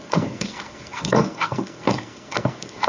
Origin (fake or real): fake